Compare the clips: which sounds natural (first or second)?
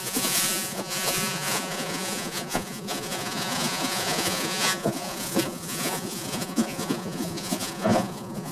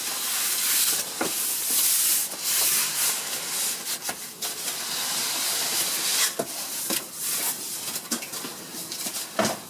second